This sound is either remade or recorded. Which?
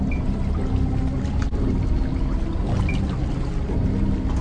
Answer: recorded